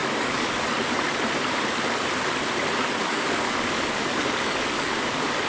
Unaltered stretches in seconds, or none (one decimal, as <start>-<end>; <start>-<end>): 0.7-3.0